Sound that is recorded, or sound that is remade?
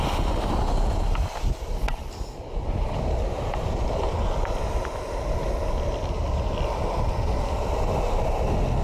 recorded